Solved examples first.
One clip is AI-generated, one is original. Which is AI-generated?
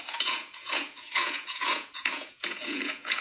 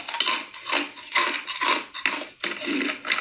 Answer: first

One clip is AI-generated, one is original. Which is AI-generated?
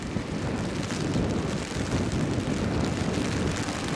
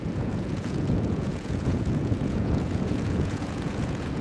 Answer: second